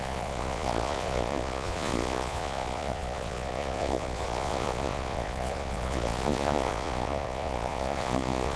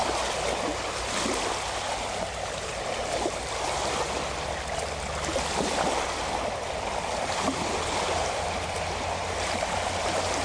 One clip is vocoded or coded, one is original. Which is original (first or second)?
second